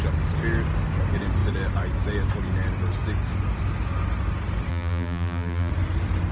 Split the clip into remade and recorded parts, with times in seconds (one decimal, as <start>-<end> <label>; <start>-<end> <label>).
0.0-4.7 recorded; 4.7-5.7 remade; 5.7-6.3 recorded

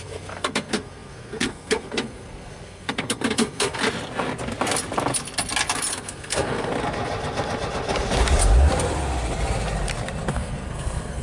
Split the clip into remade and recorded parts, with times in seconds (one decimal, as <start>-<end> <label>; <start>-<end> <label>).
0.0-3.8 remade; 3.8-5.9 recorded; 5.9-6.7 remade; 6.7-10.3 recorded; 10.3-11.2 remade